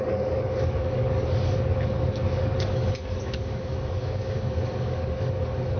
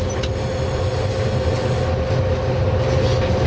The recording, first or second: second